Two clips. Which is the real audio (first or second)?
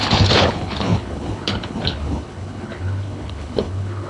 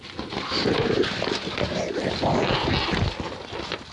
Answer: second